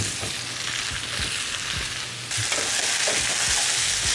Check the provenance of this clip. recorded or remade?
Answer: recorded